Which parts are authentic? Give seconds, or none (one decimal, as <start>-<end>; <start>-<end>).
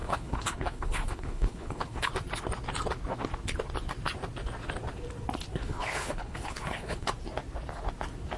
2.1-5.6; 7.1-8.4